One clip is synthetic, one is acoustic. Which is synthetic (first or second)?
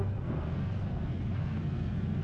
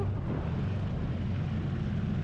first